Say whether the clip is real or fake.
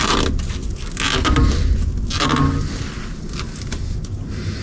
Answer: real